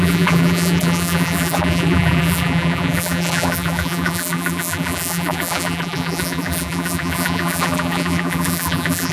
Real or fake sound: fake